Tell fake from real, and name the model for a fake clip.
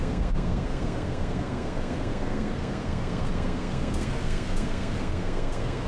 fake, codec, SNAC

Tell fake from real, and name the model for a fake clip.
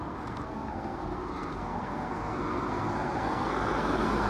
fake, codec, SNAC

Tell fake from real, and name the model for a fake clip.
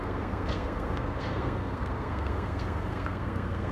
fake, codec, SNAC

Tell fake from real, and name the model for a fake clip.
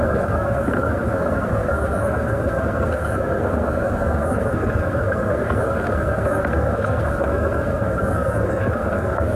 fake, codec, SNAC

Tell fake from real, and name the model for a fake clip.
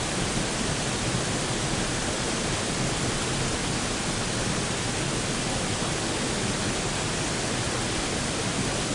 real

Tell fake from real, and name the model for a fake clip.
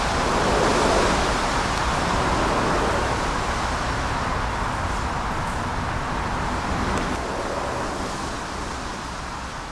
real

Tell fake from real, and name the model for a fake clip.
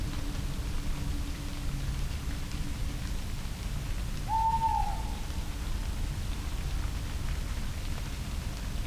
real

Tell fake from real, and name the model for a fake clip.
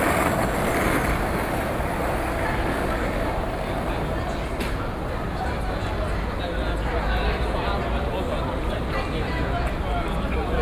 real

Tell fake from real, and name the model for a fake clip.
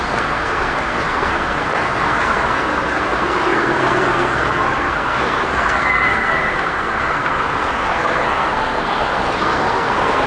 fake, codec, SNAC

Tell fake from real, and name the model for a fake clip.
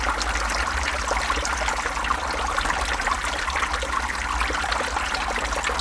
real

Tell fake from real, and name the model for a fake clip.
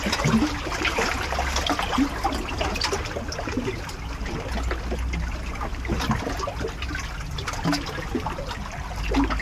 real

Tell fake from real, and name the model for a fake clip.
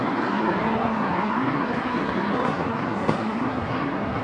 fake, codec, SNAC